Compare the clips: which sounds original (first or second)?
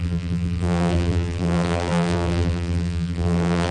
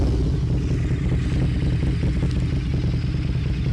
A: second